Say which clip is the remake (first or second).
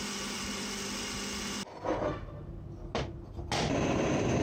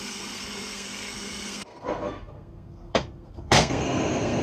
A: second